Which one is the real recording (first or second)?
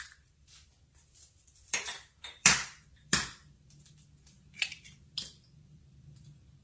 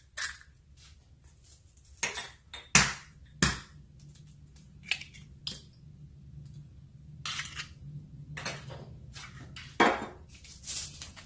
second